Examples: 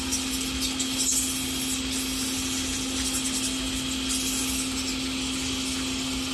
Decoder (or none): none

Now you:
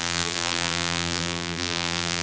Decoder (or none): vocoder, BigVGAN v2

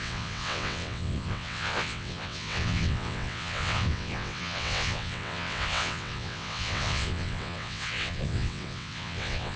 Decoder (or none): vocoder, WaveNeXt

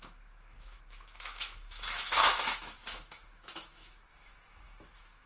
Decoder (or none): autoencoder, DAC-VAE